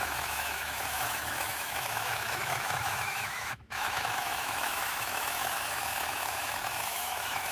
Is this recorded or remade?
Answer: remade